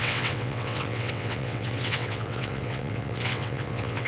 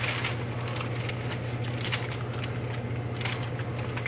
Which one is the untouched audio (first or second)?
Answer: second